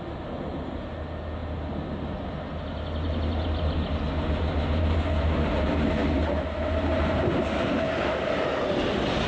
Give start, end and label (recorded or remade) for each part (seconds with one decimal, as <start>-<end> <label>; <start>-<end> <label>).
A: 0.0-9.3 recorded